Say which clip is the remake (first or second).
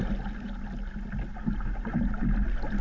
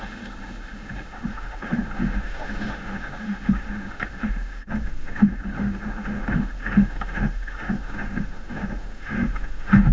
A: second